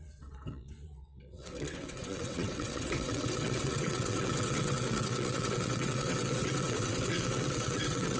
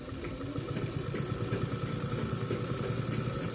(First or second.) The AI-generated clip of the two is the first